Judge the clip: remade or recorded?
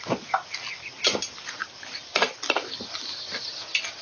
recorded